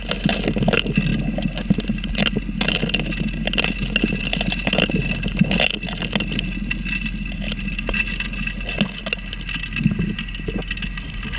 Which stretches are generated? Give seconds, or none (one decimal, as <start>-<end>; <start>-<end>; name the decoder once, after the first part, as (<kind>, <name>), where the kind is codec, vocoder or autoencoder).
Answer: none